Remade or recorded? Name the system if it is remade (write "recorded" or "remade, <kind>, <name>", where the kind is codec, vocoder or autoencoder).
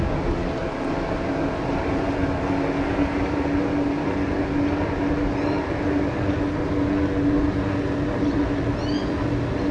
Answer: recorded